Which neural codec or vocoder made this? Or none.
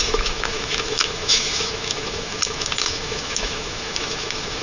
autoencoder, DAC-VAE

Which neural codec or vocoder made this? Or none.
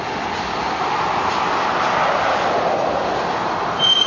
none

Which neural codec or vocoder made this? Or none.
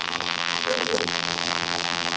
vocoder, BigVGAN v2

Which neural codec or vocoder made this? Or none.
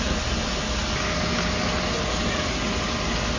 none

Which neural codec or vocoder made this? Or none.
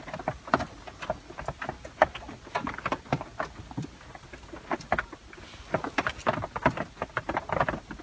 none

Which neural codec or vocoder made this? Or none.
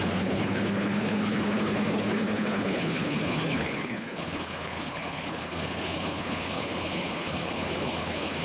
codec, HILCodec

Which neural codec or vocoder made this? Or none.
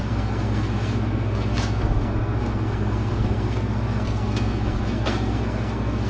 codec, SNAC